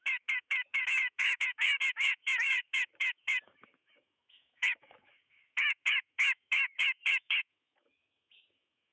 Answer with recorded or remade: remade